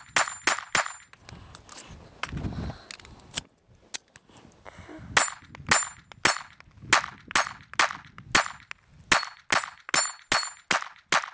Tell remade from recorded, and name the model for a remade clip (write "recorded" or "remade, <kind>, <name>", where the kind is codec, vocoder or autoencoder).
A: recorded